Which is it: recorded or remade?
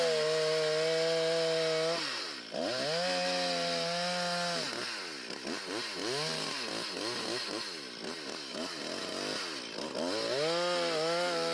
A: recorded